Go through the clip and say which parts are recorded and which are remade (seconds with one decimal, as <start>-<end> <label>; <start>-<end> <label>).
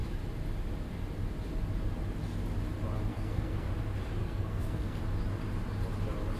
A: 0.0-3.1 recorded; 3.1-3.7 remade; 3.7-4.2 recorded; 4.2-5.0 remade; 5.0-6.4 recorded